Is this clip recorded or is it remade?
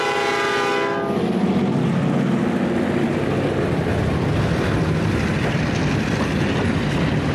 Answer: recorded